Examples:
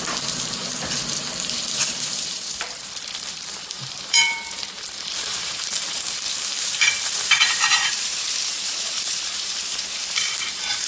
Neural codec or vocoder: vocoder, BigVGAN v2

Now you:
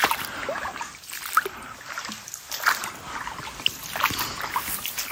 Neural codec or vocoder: vocoder, BigVGAN v2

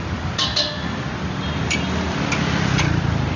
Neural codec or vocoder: none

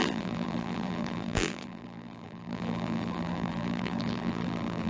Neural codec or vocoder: vocoder, BigVGAN v2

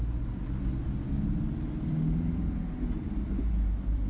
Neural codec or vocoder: none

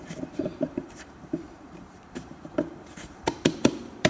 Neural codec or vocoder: vocoder, BigVGAN v2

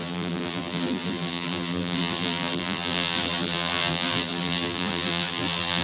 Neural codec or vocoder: vocoder, BigVGAN v2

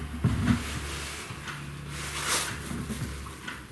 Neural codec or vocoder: none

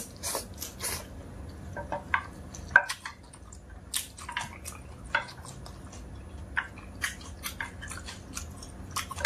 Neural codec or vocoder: none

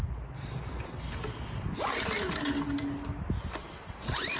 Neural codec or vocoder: none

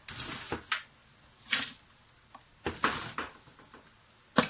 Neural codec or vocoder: none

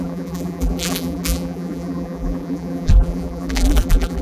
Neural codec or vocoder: vocoder, BigVGAN v2